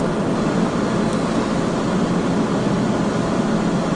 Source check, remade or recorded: recorded